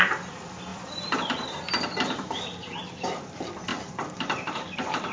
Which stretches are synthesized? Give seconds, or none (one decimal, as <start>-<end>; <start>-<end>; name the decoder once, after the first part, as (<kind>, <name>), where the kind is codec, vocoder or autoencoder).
0.0-5.1 (vocoder, BigVGAN v2)